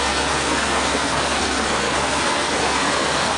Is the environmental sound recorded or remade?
remade